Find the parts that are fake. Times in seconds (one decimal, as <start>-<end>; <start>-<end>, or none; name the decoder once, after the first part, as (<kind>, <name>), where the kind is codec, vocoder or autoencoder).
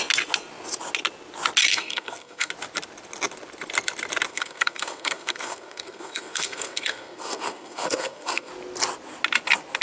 1.7-2.5 (codec, SNAC); 4.3-8.5